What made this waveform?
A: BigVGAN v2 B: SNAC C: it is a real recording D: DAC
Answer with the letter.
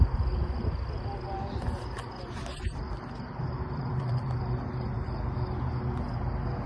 C